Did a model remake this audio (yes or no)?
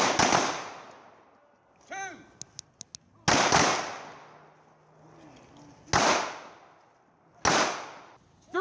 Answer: no